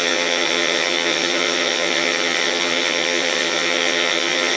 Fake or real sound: fake